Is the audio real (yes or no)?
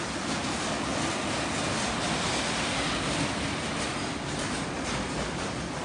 yes